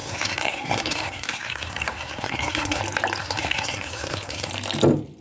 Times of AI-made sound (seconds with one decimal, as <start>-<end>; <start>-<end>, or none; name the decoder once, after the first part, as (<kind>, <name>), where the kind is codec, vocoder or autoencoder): 0.0-2.8 (codec, SNAC); 3.2-4.5